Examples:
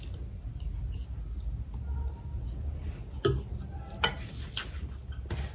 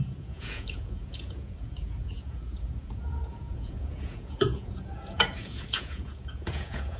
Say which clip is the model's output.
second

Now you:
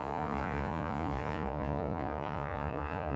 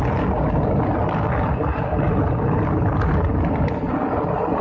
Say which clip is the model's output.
first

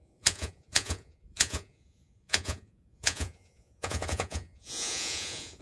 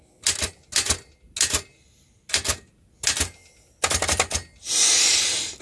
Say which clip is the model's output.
first